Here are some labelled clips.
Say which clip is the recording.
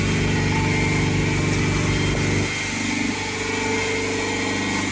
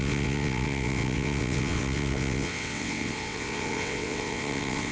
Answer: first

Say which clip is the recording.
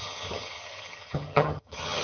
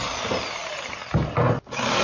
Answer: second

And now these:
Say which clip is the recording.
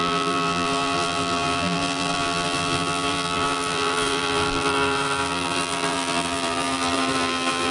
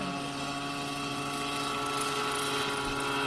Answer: second